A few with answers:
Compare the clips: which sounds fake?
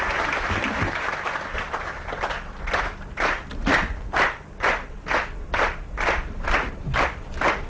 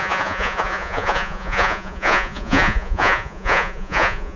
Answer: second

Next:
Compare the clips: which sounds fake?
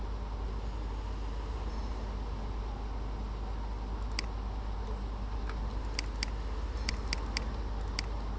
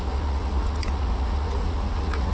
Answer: second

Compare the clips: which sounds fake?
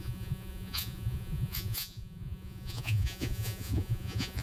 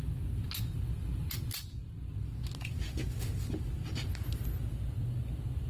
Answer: first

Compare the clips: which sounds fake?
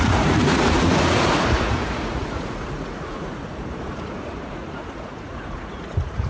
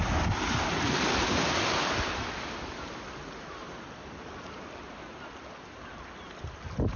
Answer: first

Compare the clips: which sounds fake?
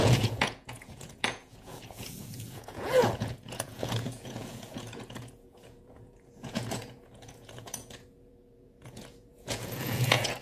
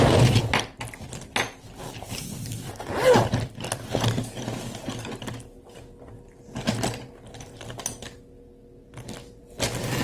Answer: first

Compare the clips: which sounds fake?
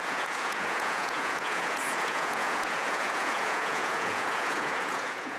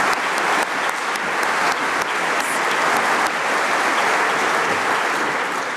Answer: first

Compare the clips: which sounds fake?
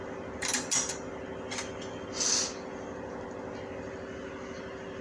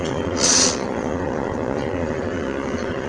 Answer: second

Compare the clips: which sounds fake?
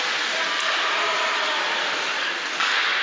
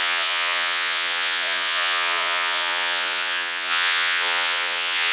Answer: second